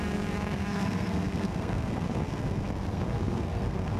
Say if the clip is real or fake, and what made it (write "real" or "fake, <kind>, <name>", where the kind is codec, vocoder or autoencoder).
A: fake, codec, SNAC